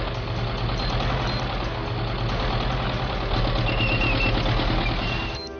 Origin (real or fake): real